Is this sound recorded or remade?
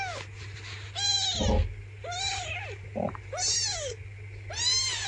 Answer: recorded